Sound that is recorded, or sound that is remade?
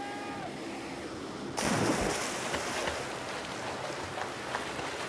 recorded